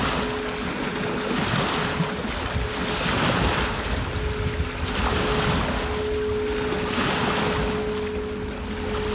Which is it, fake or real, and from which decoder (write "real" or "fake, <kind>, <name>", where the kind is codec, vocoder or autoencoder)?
real